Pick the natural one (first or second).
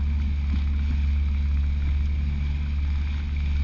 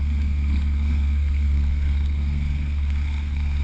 first